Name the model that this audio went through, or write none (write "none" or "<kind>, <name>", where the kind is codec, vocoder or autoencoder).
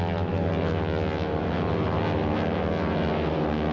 none